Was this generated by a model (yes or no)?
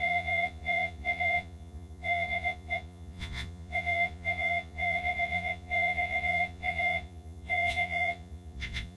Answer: yes